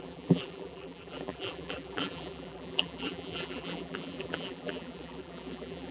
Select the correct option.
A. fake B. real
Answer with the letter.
A